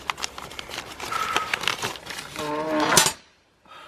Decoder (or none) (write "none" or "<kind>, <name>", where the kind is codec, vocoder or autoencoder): none